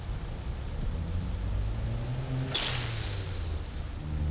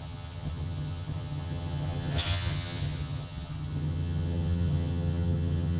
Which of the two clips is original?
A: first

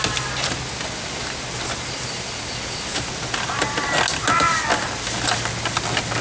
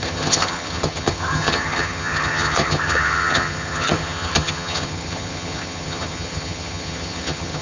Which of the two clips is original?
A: first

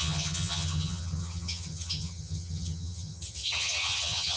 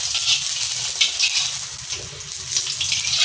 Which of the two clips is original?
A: second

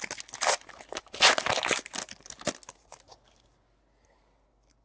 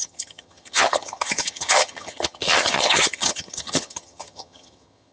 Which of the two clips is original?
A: first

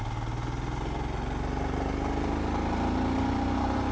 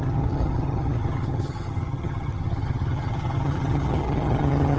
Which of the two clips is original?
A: first